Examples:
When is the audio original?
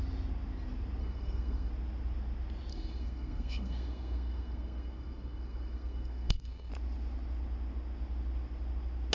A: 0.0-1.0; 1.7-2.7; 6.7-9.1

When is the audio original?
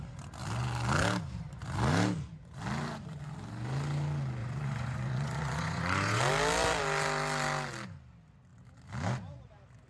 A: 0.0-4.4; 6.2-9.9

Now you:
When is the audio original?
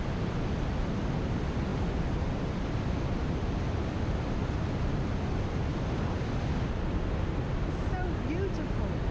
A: 0.0-1.7; 3.1-9.1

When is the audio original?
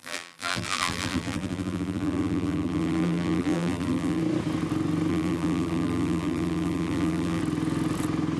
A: 4.2-5.1; 7.4-8.4